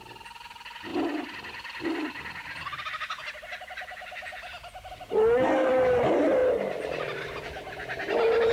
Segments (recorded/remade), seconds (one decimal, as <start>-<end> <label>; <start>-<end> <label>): 0.0-8.5 recorded